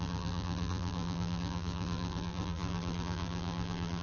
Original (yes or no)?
no